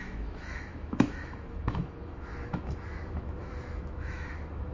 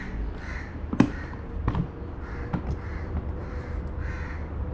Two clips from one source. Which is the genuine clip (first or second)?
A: second